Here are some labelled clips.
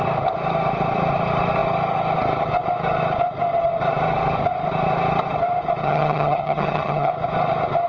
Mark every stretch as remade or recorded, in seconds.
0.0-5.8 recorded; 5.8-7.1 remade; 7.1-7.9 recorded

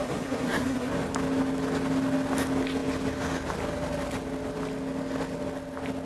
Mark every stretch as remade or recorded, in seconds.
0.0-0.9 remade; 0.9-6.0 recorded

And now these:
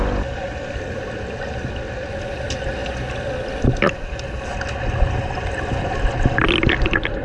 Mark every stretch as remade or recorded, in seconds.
0.0-7.2 recorded

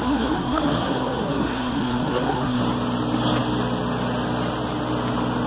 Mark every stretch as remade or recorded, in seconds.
0.0-2.6 remade; 2.6-5.5 recorded

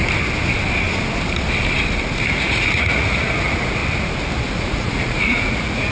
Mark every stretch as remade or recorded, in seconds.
0.0-2.3 recorded; 2.3-3.8 remade; 3.8-4.6 recorded; 4.6-5.9 remade

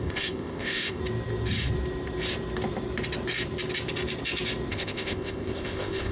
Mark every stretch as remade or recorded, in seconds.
0.0-1.0 remade; 1.0-4.7 recorded; 4.7-6.1 remade

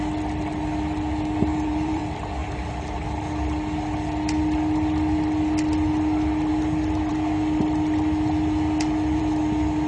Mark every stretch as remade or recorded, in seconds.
0.0-1.5 recorded; 1.5-2.0 remade; 2.0-9.9 recorded